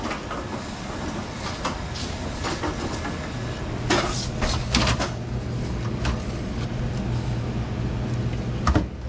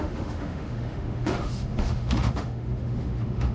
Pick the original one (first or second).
first